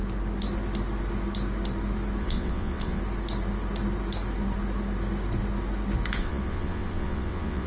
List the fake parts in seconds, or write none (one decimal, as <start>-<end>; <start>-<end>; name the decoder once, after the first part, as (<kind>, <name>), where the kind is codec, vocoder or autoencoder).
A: 2.2-3.0 (vocoder, WaveNeXt); 6.2-7.7